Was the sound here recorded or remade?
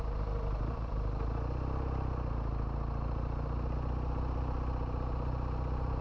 recorded